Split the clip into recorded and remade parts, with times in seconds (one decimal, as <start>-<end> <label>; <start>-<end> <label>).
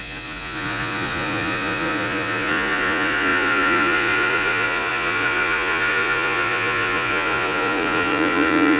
0.0-8.8 remade